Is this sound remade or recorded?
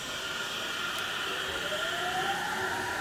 recorded